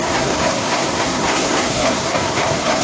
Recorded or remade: remade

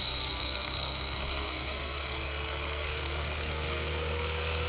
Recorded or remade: remade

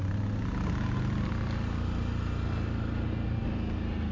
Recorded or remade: recorded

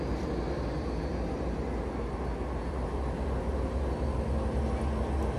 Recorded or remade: recorded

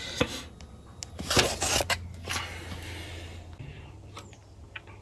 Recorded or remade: recorded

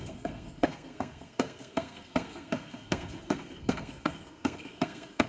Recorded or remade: remade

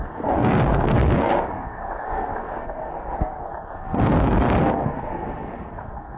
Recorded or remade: remade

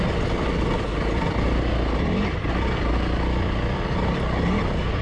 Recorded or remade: recorded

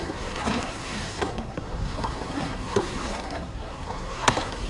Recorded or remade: remade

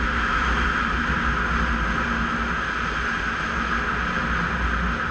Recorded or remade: recorded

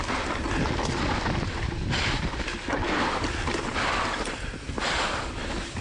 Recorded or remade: recorded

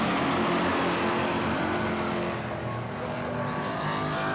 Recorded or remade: recorded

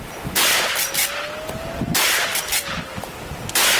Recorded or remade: recorded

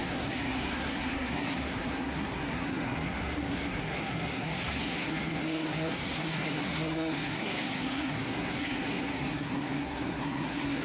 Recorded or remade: remade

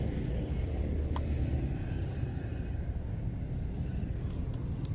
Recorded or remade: recorded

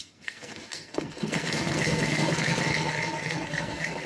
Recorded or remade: remade